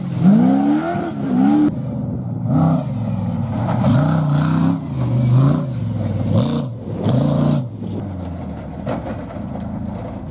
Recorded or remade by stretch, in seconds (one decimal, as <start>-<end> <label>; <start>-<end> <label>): 0.0-6.7 recorded; 6.7-9.1 remade; 9.1-10.3 recorded